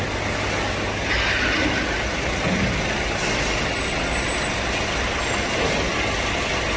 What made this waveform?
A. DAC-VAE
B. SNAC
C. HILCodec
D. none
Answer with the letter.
D